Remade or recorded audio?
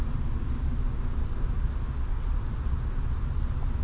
recorded